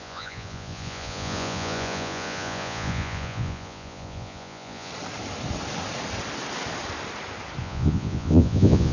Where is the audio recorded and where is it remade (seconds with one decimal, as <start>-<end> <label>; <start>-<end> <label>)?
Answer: 0.0-4.9 remade; 4.9-7.6 recorded; 7.6-8.9 remade